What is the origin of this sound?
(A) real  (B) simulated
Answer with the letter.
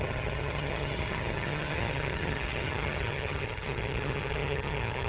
B